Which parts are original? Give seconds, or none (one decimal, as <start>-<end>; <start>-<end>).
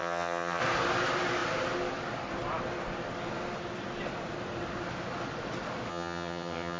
0.6-5.9